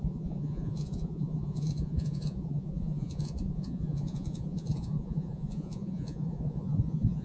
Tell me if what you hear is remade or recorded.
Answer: remade